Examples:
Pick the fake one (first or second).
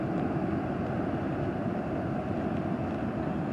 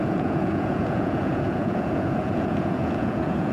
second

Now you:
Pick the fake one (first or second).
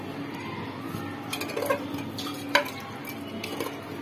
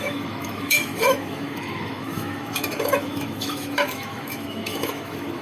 second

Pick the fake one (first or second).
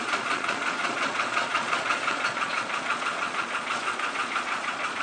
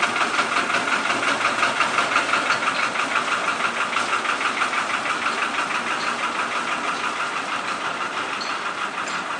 first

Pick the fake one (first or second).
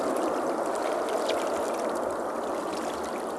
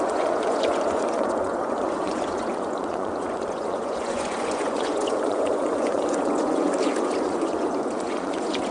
second